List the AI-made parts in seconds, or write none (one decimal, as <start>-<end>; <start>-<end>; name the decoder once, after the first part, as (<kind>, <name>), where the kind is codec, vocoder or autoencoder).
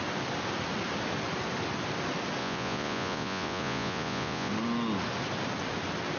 2.4-4.5 (vocoder, Vocos)